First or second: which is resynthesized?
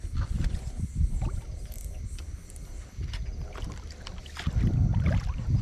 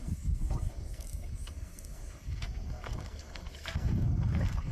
second